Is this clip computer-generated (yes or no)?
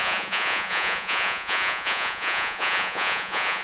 yes